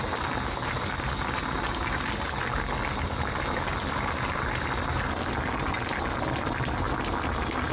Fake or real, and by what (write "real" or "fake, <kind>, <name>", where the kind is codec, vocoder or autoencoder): real